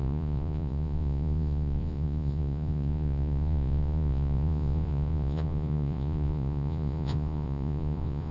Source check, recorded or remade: remade